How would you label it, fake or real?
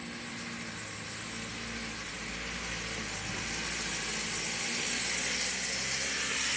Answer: real